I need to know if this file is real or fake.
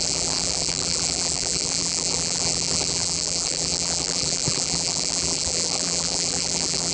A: fake